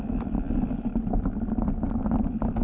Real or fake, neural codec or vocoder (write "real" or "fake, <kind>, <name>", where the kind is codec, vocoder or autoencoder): real